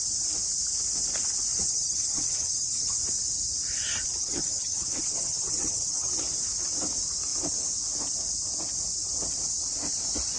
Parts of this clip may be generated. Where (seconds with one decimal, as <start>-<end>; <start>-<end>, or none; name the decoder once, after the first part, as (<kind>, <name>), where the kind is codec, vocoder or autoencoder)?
1.5-3.0 (vocoder, HiFi-GAN); 4.2-6.1